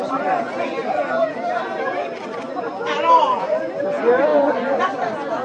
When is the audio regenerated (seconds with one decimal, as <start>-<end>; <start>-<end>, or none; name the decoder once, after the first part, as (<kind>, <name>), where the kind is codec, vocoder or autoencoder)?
0.0-5.4 (vocoder, BigVGAN v2)